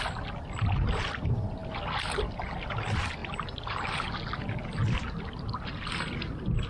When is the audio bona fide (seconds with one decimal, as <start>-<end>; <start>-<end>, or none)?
0.0-6.7